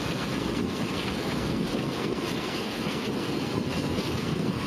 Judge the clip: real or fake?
fake